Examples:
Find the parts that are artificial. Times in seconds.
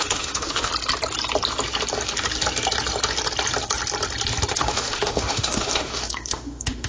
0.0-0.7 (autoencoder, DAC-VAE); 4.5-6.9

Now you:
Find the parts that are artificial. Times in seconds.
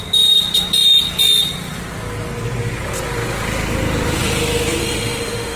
4.8-5.6 (autoencoder, DAC-VAE)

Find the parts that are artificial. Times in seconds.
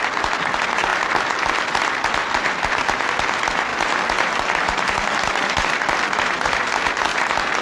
none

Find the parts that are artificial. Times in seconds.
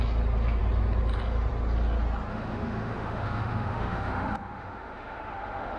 2.3-5.8 (autoencoder, DAC-VAE)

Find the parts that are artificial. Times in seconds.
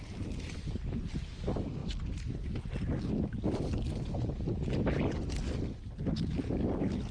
none